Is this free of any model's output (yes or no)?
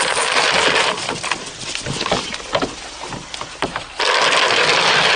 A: yes